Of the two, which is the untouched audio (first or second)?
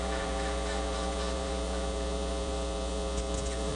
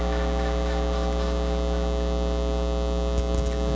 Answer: second